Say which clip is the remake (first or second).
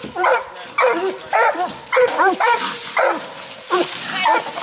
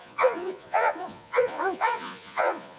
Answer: second